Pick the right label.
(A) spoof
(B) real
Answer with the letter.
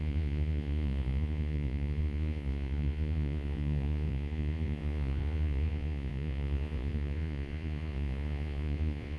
A